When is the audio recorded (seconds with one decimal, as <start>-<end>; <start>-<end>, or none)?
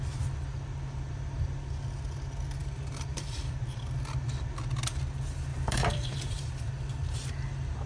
0.0-2.6; 3.8-5.5; 6.4-7.9